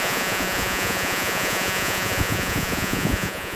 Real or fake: fake